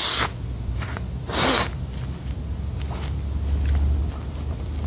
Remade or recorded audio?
recorded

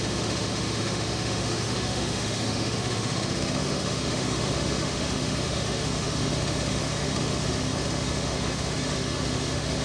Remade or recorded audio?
remade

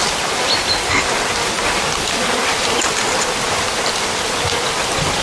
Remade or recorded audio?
recorded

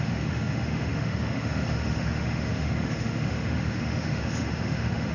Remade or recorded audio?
remade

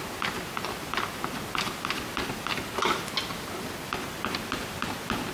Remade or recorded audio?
recorded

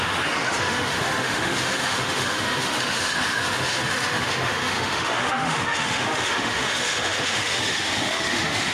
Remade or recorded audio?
remade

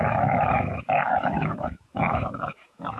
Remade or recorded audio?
remade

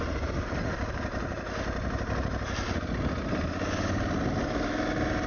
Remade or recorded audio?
recorded